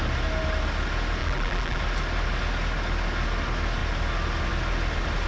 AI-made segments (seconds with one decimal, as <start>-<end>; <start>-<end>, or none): 1.2-1.8